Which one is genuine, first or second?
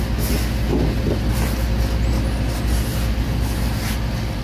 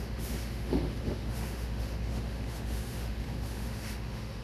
first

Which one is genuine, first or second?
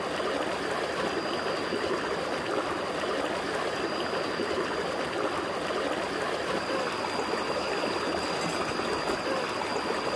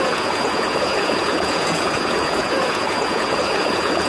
first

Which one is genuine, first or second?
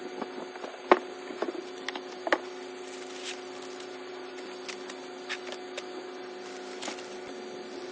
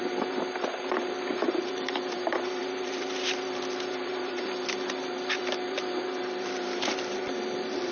first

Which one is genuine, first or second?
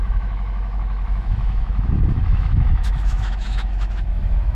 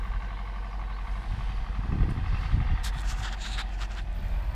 second